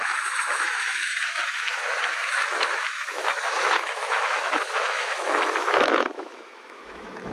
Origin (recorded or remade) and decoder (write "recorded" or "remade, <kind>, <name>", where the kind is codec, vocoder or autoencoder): remade, autoencoder, DAC-VAE